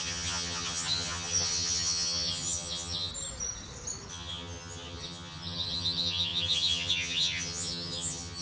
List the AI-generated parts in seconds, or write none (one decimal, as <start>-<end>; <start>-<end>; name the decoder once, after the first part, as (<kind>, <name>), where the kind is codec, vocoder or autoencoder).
0.0-3.1 (vocoder, HiFi-GAN); 4.1-8.4